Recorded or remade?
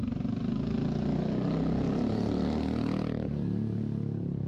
recorded